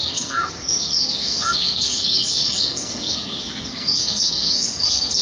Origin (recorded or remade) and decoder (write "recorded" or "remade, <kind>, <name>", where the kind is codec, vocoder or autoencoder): remade, codec, SNAC